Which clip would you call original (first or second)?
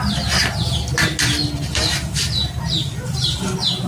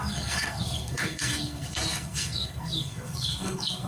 first